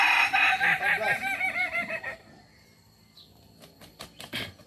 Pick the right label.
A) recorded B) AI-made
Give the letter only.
B